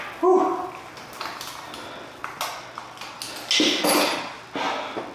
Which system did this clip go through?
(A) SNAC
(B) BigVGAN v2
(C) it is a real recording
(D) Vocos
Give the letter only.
C